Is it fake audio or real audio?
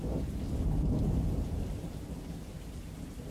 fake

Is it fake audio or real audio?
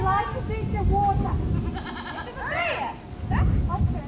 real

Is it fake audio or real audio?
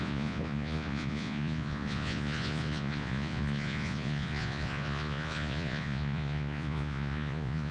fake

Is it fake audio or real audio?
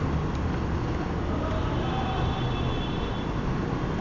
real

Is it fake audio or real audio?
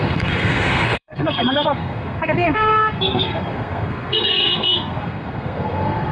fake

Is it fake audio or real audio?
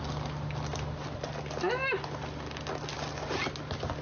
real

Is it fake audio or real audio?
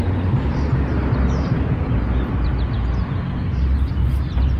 real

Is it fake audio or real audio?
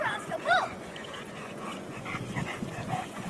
fake